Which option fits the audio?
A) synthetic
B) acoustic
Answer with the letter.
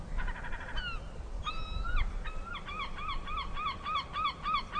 B